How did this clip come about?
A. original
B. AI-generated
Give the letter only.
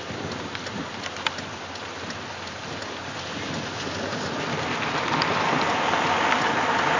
A